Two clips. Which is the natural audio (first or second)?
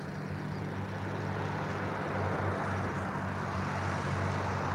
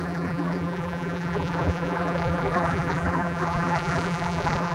first